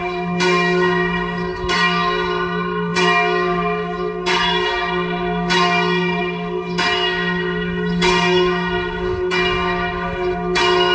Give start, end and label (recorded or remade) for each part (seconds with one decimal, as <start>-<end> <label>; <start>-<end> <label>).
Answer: 0.0-10.9 remade